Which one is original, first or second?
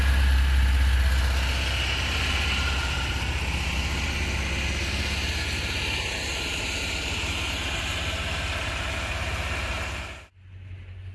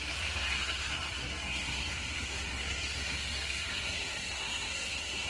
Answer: first